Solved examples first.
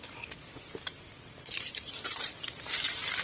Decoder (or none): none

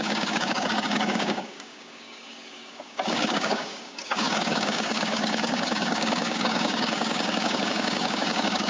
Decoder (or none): codec, DAC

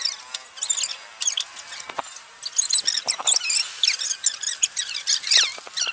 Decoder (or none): none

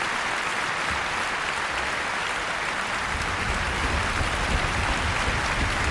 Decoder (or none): none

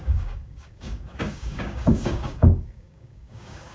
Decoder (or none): codec, DAC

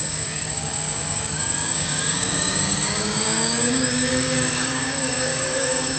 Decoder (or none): codec, DAC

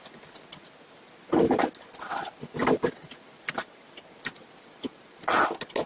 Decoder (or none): none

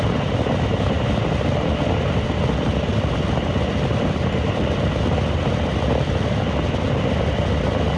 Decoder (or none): none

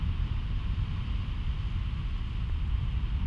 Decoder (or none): none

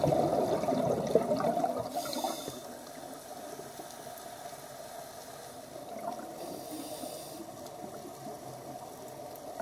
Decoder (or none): none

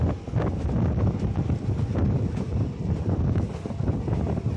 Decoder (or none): none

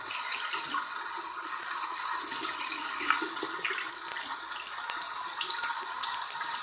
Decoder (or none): none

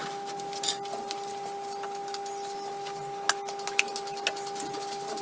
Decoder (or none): none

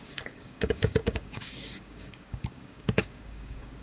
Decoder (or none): codec, DAC